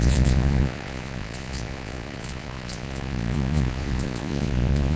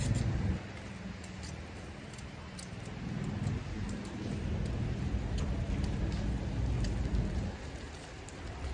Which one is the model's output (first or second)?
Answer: first